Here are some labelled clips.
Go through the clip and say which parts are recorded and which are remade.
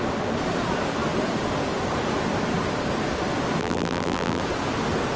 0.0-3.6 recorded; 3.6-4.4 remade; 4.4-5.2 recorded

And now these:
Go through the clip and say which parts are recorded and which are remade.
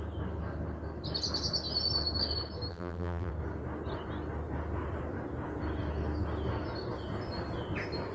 0.0-2.7 recorded; 2.7-3.3 remade; 3.3-8.1 recorded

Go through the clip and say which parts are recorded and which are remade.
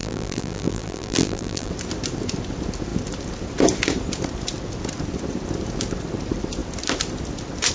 0.0-1.7 remade; 1.7-7.7 recorded